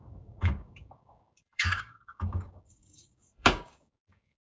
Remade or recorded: remade